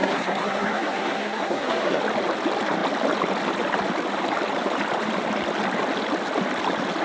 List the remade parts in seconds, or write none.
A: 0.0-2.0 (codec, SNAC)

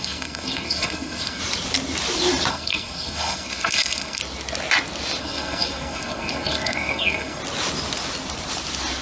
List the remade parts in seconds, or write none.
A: 0.0-1.4 (codec, SNAC); 2.5-4.2; 5.2-7.4

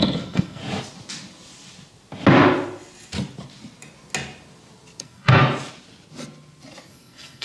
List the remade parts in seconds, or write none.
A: 0.0-0.6 (codec, SNAC); 5.0-5.4; 6.9-7.4